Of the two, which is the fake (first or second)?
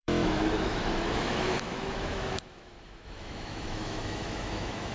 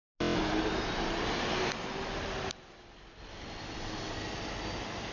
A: first